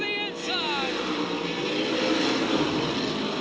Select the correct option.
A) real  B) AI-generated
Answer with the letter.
A